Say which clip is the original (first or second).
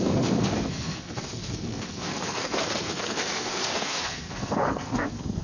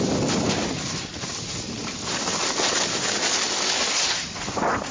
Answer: second